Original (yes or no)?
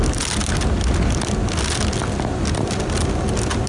yes